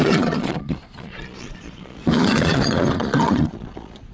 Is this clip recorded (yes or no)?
no